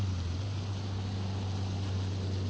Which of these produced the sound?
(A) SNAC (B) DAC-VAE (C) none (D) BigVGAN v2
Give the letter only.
C